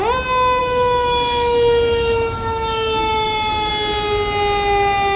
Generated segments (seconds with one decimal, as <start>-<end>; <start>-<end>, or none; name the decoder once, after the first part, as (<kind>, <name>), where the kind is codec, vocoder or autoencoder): 0.6-3.7 (autoencoder, DAC-VAE)